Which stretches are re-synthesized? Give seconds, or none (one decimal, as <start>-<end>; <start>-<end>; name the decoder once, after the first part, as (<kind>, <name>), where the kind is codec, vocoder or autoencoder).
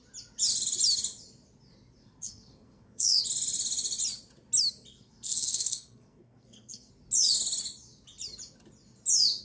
2.0-3.2 (codec, SNAC); 4.9-6.9